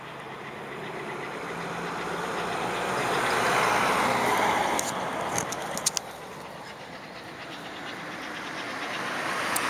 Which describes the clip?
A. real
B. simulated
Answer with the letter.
A